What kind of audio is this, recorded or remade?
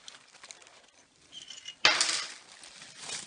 recorded